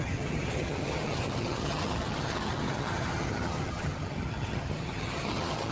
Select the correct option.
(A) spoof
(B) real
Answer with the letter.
A